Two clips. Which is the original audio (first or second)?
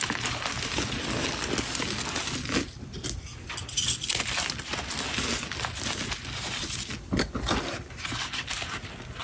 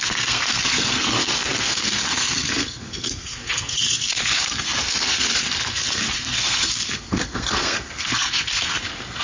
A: first